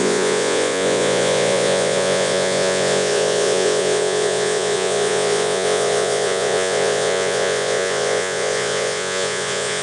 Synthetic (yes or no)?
yes